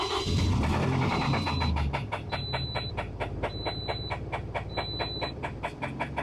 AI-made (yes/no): yes